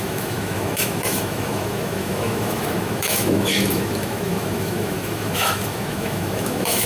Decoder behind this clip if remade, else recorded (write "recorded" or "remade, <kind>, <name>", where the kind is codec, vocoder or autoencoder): remade, autoencoder, DAC-VAE